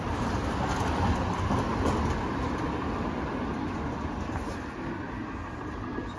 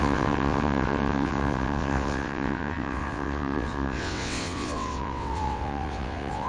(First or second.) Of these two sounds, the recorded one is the first